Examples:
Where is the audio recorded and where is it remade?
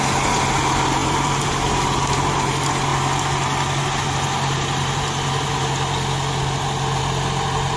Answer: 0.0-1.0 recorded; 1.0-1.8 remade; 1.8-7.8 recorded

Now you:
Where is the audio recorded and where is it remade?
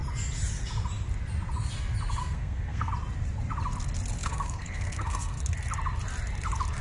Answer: 0.0-2.2 recorded; 2.2-2.9 remade; 2.9-4.2 recorded; 4.2-5.4 remade; 5.4-6.8 recorded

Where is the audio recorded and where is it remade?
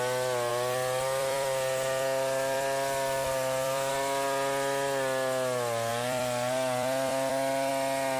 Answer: 0.0-0.5 recorded; 0.5-3.9 remade; 3.9-5.9 recorded; 5.9-7.7 remade; 7.7-8.2 recorded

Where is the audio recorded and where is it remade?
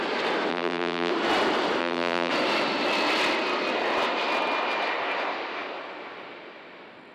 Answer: 0.0-0.5 recorded; 0.5-1.1 remade; 1.1-1.8 recorded; 1.8-2.3 remade; 2.3-7.1 recorded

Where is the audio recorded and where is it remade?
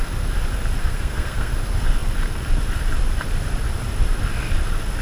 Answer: 0.0-0.8 recorded; 0.8-1.5 remade; 1.5-5.0 recorded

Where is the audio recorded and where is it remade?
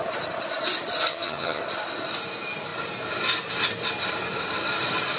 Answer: 0.0-1.1 recorded; 1.1-1.6 remade; 1.6-5.2 recorded